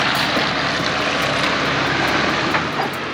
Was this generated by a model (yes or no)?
no